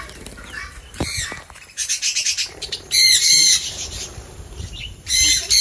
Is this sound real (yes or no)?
no